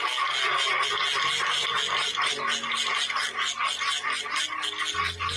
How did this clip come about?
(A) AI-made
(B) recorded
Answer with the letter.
B